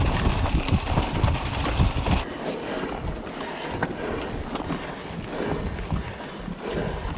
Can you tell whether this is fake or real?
real